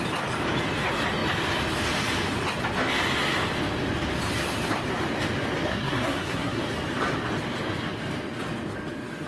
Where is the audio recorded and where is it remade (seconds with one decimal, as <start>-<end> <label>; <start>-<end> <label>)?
0.0-5.7 recorded; 5.7-6.6 remade; 6.6-9.3 recorded